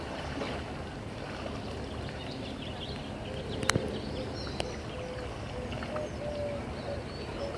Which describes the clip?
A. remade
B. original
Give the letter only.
B